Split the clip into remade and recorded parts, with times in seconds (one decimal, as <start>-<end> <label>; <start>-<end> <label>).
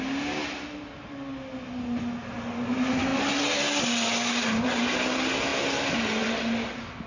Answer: 0.0-7.1 recorded